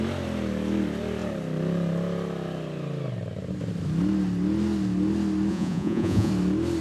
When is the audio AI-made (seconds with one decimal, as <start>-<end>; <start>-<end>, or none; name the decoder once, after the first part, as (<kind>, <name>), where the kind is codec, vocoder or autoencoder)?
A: 5.5-6.3 (vocoder, Vocos)